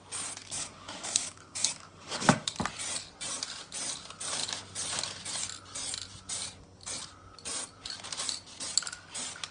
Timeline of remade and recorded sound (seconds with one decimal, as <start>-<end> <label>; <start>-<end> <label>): 0.0-0.4 recorded; 0.4-2.6 remade; 2.6-9.5 recorded